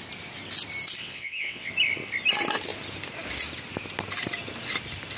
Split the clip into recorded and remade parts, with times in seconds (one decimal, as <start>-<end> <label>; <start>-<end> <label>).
0.0-1.0 recorded; 1.0-1.7 remade; 1.7-5.2 recorded